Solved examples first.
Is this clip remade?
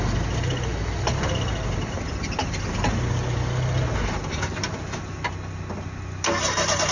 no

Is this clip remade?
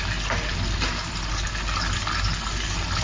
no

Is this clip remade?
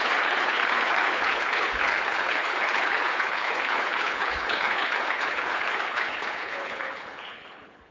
yes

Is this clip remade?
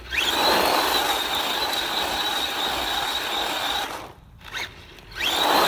no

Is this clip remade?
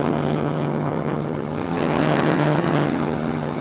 yes